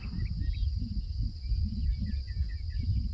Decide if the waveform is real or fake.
real